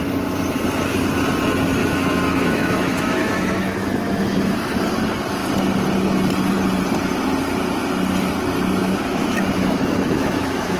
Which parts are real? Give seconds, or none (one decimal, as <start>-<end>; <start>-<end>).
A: 0.0-1.8; 4.5-8.8